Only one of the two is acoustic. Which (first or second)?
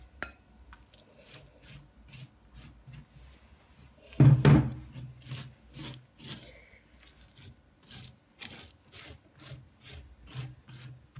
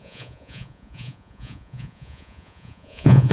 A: first